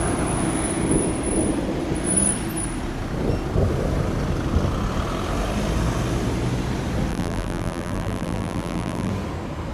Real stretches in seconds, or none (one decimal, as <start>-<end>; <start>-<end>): 0.0-7.1; 9.1-9.7